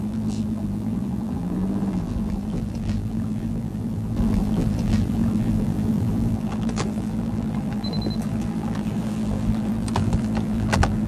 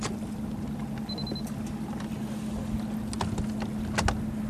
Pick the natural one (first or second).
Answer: second